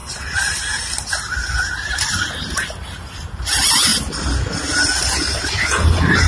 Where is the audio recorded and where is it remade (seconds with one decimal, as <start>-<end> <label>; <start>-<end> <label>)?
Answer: 0.0-6.3 recorded